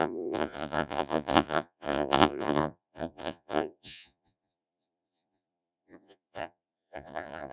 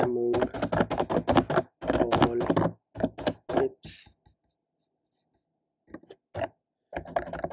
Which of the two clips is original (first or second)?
second